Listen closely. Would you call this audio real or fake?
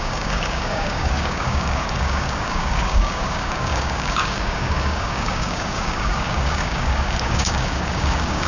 fake